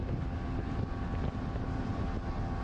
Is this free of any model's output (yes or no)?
yes